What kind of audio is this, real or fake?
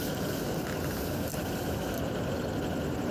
real